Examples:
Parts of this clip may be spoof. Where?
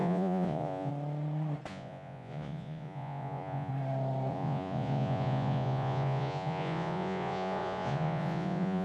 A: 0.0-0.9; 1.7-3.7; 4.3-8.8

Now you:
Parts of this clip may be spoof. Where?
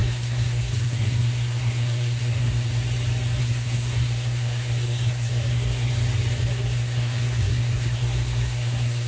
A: 0.0-2.7; 3.4-5.9; 6.4-9.1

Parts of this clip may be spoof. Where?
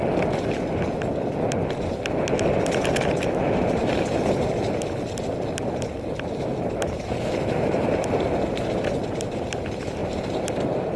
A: 3.8-4.4; 6.5-8.6; 10.0-10.6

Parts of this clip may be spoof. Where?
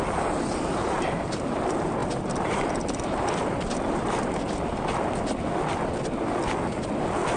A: none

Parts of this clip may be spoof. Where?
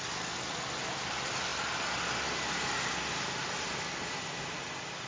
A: none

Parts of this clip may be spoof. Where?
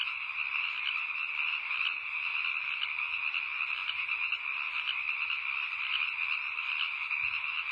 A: none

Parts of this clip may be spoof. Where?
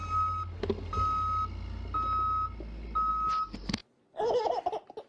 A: none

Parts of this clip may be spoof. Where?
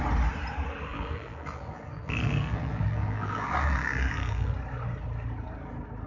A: 0.9-4.5